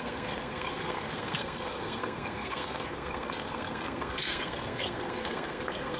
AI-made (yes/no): yes